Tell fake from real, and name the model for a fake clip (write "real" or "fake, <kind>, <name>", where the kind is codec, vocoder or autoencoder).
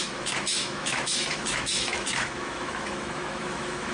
fake, autoencoder, DAC-VAE